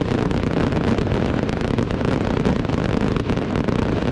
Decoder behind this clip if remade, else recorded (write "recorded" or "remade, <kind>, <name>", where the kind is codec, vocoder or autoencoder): recorded